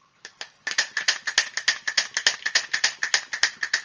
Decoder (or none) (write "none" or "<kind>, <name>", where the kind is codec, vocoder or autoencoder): none